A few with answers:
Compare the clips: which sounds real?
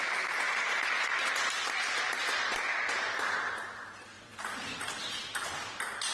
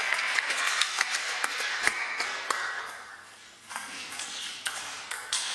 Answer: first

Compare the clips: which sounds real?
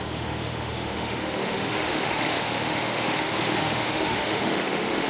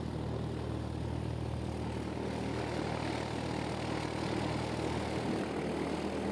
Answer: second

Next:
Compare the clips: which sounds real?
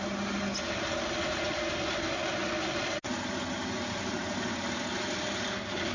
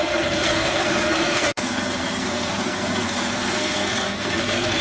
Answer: first